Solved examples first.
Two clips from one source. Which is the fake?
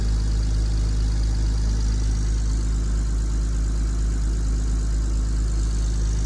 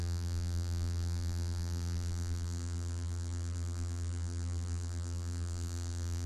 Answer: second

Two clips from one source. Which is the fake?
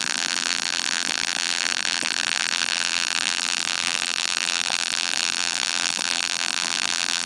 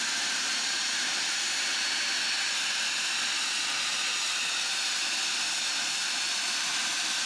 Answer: first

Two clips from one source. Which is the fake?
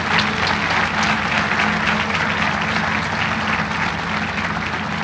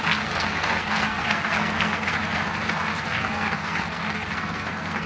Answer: second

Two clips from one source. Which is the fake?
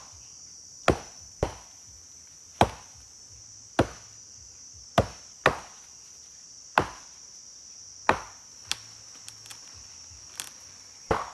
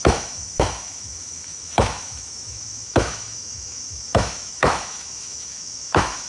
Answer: second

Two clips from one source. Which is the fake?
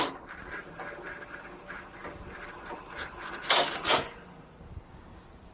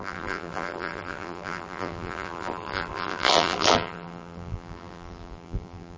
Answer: second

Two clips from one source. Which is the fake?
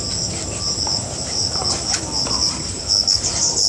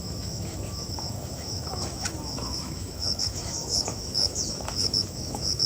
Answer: second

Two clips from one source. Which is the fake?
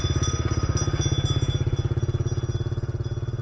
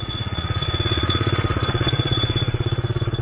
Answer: second